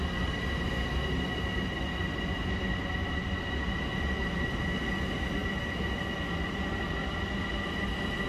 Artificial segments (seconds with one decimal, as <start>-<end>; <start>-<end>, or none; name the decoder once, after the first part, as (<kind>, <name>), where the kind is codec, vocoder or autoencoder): none